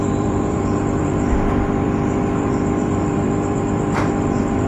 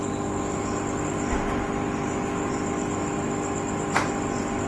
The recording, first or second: second